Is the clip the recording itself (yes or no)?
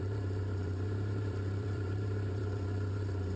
no